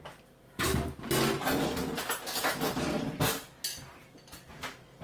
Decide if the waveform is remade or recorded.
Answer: recorded